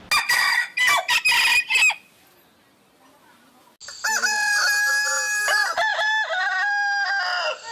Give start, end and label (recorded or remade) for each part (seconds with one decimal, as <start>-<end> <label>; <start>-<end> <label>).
0.0-7.7 recorded